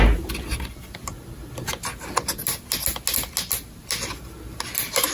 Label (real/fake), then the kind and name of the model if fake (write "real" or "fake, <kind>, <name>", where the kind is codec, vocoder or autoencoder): real